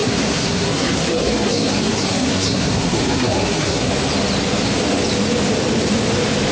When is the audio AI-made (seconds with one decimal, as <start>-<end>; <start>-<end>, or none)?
0.0-3.9